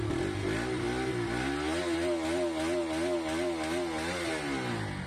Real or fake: real